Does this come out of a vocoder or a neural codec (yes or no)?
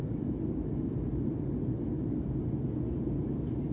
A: no